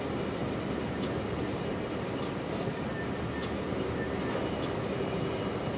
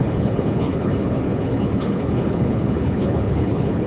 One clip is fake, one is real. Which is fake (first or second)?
second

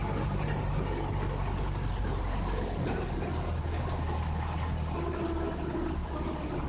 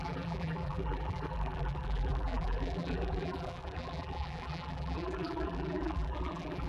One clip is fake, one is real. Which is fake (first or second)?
second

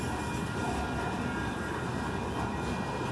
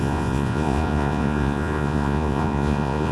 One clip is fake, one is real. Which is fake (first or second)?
second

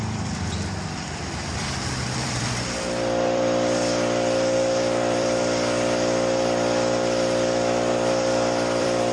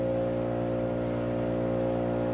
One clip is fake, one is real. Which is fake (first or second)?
first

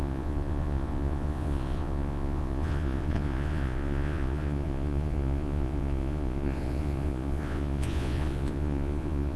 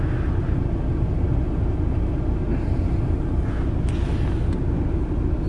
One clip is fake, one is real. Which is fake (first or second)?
first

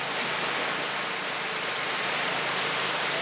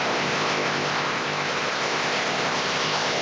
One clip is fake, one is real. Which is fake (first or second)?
second